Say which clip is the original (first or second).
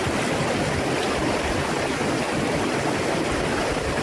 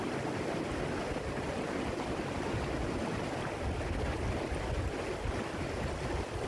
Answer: second